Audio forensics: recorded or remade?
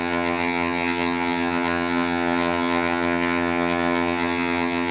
remade